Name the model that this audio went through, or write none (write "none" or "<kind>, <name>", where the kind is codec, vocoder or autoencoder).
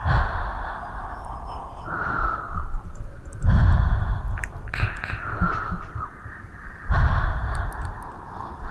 none